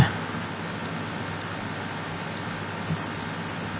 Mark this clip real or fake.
real